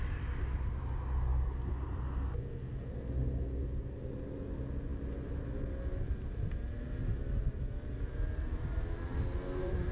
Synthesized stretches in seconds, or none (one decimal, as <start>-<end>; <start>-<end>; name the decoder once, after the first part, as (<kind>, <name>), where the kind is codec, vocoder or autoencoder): none